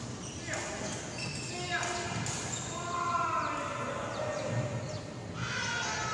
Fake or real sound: real